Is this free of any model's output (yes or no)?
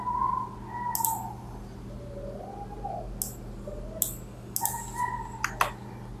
yes